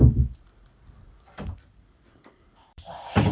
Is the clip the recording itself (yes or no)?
no